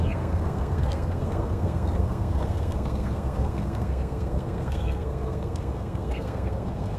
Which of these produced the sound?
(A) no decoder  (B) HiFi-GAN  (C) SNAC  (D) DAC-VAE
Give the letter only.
C